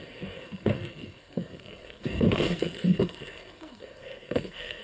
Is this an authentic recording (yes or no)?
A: no